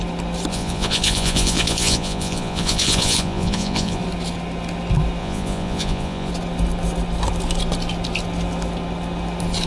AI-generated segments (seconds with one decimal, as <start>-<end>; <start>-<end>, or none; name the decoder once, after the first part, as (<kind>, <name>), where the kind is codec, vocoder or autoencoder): 0.5-4.0 (vocoder, Vocos); 5.2-6.3